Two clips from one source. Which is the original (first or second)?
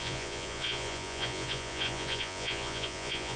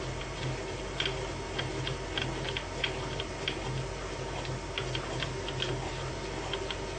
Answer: second